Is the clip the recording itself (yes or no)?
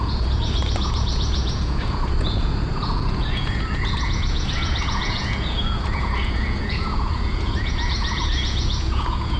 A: no